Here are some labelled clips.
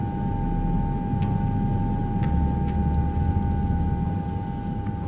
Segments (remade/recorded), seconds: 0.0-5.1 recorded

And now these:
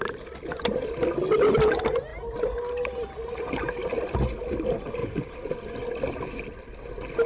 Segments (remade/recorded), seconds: 0.0-2.1 recorded; 2.1-3.1 remade; 3.1-5.0 recorded; 5.0-5.5 remade; 5.5-7.3 recorded

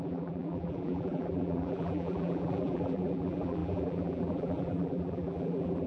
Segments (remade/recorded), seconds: 0.0-5.9 remade

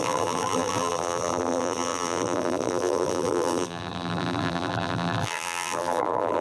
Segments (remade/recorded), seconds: 0.0-6.4 remade

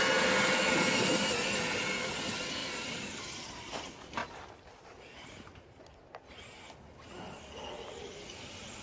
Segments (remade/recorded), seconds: 0.0-2.6 recorded; 2.6-3.8 remade; 3.8-8.8 recorded